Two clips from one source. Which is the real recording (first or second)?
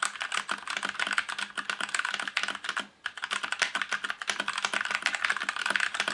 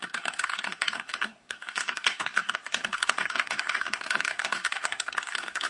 first